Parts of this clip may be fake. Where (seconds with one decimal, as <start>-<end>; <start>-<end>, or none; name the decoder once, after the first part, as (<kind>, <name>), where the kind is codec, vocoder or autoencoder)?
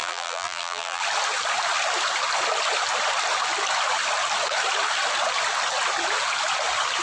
0.0-1.0 (vocoder, BigVGAN v2)